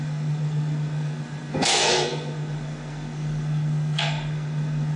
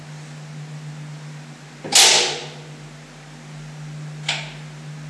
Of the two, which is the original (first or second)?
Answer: second